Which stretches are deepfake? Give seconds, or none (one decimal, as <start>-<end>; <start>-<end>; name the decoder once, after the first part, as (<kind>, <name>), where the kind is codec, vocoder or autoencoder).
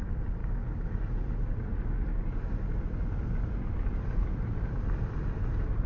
none